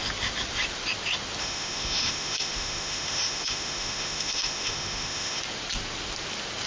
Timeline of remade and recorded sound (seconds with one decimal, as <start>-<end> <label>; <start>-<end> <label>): 0.0-1.4 recorded; 1.4-5.4 remade; 5.4-6.7 recorded